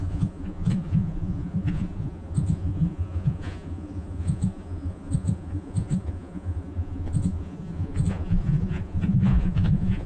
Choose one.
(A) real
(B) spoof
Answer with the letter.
B